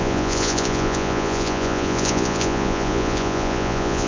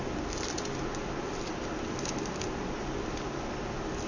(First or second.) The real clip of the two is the second